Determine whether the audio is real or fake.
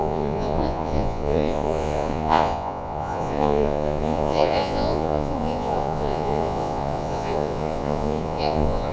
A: fake